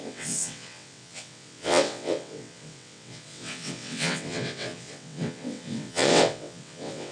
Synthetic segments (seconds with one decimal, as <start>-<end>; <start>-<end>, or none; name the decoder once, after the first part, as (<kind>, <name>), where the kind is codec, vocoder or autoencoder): 0.0-7.1 (vocoder, WaveNeXt)